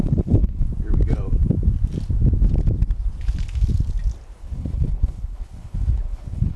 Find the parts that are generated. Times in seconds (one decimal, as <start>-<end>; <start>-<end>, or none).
0.0-0.7; 4.4-6.6